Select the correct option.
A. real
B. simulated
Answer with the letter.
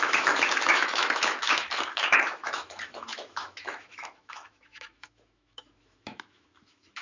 B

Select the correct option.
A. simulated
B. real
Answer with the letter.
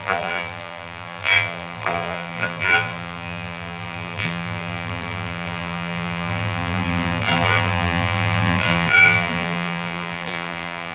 A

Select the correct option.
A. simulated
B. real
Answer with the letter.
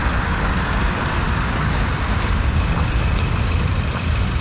B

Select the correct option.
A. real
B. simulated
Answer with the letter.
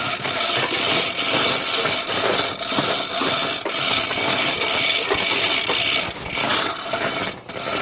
A